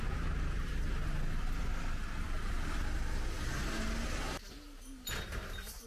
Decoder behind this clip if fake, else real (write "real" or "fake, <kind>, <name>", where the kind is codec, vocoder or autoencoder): real